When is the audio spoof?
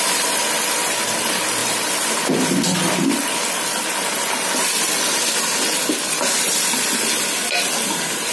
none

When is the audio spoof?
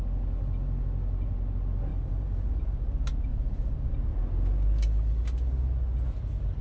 1.9-2.8 (vocoder, BigVGAN v2); 3.3-3.9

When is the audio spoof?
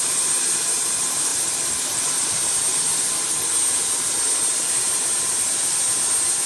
none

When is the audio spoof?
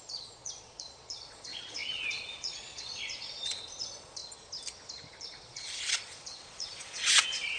0.0-4.2 (vocoder, Vocos); 5.1-7.6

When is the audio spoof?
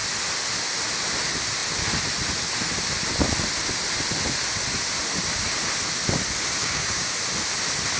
6.6-7.1 (codec, DAC)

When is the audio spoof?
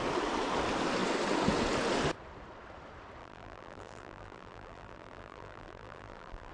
3.2-6.5 (vocoder, BigVGAN v2)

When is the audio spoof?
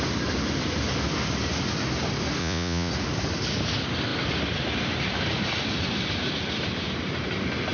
2.4-2.9 (vocoder, Vocos)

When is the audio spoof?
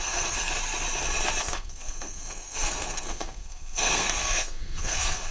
0.0-0.5 (codec, SNAC); 1.4-5.3